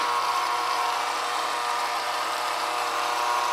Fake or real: fake